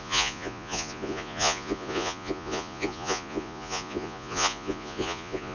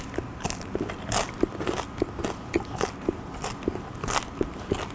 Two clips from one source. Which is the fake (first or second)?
first